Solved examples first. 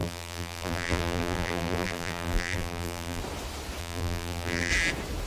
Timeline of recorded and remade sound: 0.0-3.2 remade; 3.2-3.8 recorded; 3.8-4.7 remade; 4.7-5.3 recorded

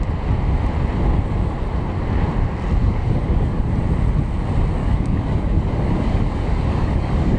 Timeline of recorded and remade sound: 0.0-2.8 recorded; 2.8-3.7 remade; 3.7-4.8 recorded; 4.8-7.4 remade

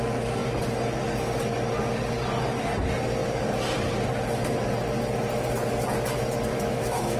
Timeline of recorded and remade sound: 0.0-6.5 recorded; 6.5-7.2 remade

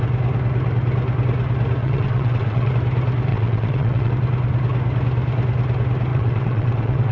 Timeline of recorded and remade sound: 0.0-1.8 recorded; 1.8-2.7 remade; 2.7-3.3 recorded; 3.3-4.1 remade; 4.1-6.1 recorded; 6.1-7.1 remade

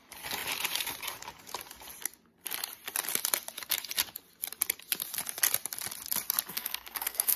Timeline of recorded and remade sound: 0.0-6.5 recorded; 6.5-7.4 remade

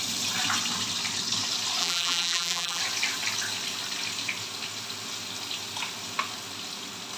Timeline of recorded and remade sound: 0.0-1.8 recorded; 1.8-2.8 remade; 2.8-7.2 recorded

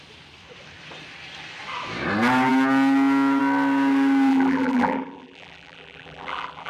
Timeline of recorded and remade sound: 0.0-4.3 recorded; 4.3-6.7 remade

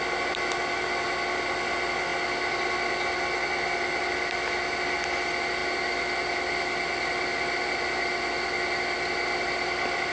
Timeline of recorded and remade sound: 0.0-10.1 recorded